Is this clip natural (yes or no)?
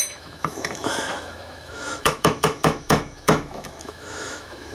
no